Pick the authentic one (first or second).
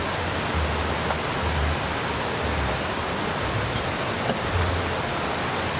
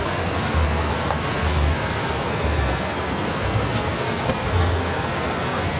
first